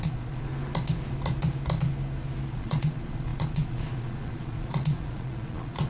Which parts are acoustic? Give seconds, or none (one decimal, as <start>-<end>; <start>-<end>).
0.5-2.5